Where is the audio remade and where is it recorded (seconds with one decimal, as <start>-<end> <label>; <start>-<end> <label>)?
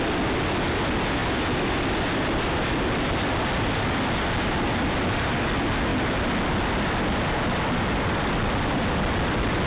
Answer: 0.0-9.7 recorded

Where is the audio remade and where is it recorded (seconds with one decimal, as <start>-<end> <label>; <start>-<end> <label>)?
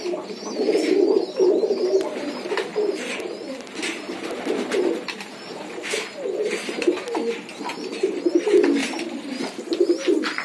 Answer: 0.0-2.7 recorded; 2.7-3.5 remade; 3.5-8.8 recorded; 8.8-9.4 remade; 9.4-10.4 recorded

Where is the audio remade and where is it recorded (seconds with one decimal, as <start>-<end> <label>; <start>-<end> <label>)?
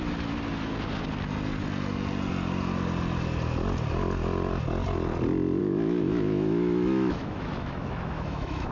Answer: 0.0-5.6 recorded; 5.6-8.7 remade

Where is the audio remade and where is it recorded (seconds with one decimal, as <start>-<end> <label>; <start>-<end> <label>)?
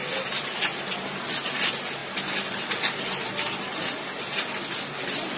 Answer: 0.0-5.4 recorded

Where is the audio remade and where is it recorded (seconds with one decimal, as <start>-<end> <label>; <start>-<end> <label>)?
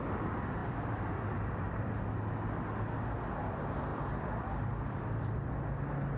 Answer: 0.0-0.6 recorded; 0.6-1.9 remade; 1.9-3.9 recorded; 3.9-5.5 remade; 5.5-6.2 recorded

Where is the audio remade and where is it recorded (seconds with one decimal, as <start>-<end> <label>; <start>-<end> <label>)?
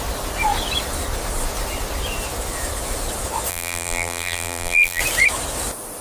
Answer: 0.0-3.5 recorded; 3.5-5.0 remade; 5.0-6.0 recorded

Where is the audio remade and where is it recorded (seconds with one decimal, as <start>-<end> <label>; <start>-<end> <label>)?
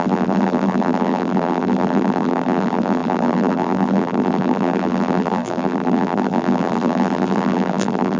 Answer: 0.0-8.2 remade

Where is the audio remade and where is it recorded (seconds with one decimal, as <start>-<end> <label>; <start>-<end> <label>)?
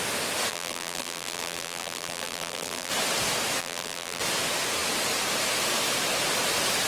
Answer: 0.0-0.5 recorded; 0.5-2.9 remade; 2.9-3.6 recorded; 3.6-4.2 remade; 4.2-6.9 recorded